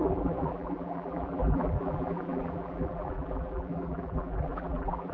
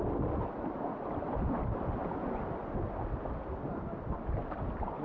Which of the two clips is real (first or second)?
second